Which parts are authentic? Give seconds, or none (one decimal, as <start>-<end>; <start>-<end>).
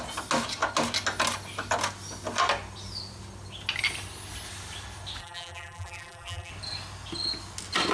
0.0-5.2; 6.5-7.9